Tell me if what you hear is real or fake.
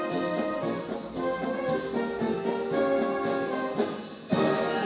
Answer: real